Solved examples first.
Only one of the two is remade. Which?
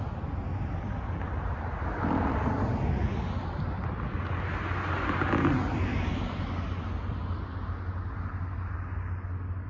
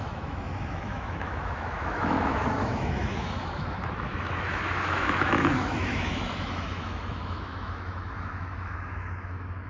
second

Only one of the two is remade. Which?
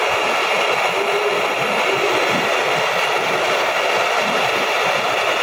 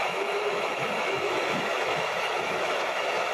second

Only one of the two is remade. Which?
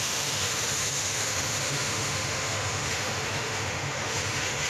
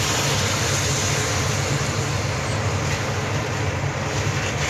first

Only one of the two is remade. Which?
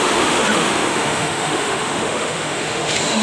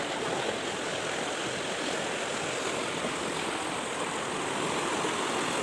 first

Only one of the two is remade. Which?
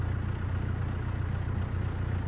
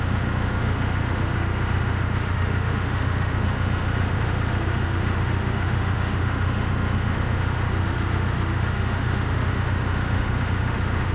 second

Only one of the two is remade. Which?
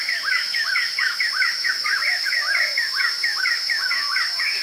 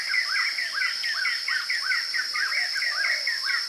first